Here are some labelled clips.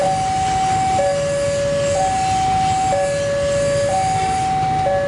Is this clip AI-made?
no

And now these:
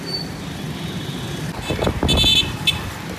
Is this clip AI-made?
yes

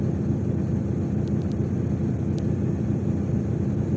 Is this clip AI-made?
no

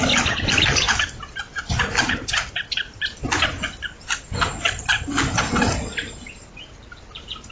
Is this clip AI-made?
no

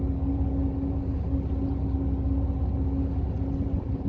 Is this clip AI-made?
no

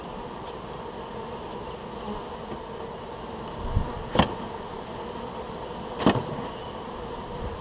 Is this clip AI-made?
no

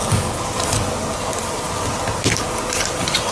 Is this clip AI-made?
no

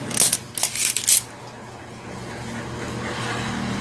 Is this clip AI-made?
no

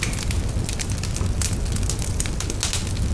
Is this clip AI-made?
no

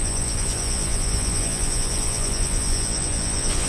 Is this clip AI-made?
yes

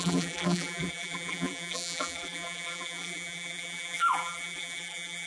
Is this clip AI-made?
yes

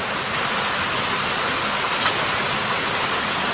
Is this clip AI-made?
no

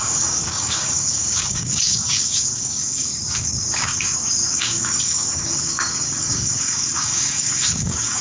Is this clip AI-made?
yes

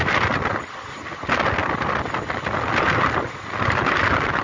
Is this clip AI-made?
no